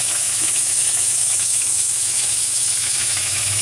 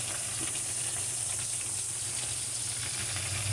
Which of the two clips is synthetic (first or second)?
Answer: first